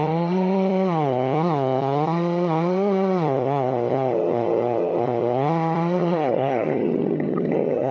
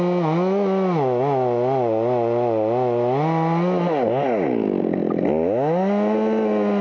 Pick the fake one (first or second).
first